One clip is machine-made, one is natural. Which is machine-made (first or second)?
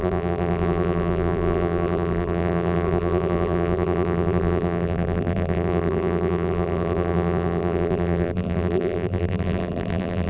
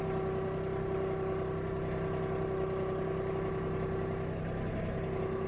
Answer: first